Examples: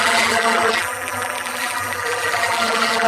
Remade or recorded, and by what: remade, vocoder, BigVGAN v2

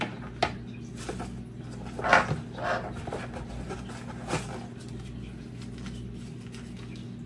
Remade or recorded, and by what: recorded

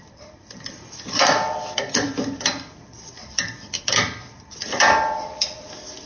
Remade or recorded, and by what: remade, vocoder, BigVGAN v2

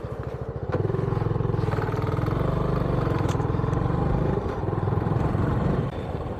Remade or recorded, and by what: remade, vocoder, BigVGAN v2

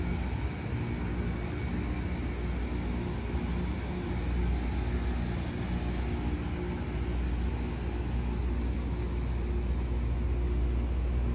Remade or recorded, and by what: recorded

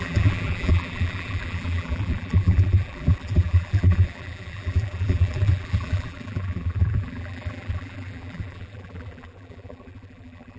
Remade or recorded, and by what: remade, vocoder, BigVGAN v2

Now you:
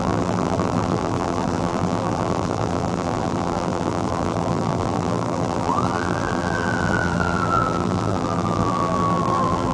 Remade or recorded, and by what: remade, vocoder, BigVGAN v2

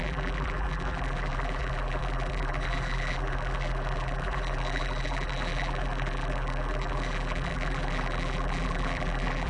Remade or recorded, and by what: remade, vocoder, BigVGAN v2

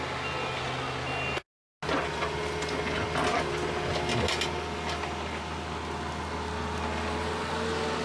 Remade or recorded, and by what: recorded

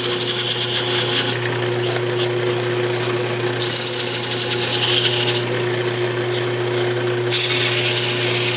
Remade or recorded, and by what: recorded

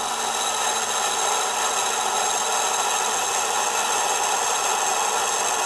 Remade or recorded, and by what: recorded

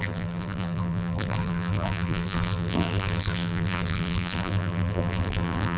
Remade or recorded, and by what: remade, vocoder, BigVGAN v2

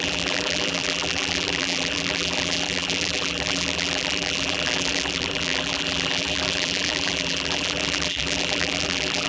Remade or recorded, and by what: remade, vocoder, BigVGAN v2